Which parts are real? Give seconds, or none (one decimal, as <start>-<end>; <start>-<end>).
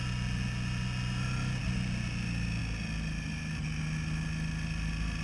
0.0-5.2